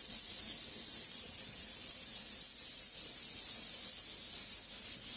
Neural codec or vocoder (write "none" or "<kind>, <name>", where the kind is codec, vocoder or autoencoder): none